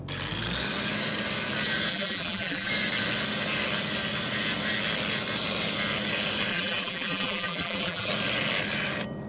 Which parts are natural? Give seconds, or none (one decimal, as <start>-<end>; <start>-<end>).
0.0-1.9; 2.7-6.5; 8.1-9.3